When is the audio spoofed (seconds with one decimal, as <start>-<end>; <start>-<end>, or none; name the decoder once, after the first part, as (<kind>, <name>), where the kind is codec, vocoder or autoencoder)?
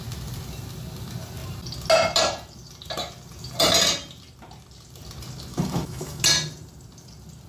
5.5-6.2 (autoencoder, DAC-VAE)